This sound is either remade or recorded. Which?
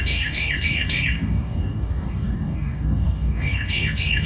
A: remade